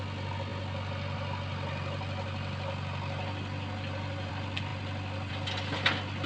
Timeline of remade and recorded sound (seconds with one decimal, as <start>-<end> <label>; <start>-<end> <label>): 0.0-6.3 recorded